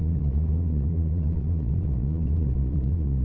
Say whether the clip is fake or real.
fake